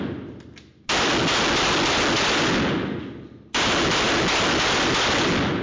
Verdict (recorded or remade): recorded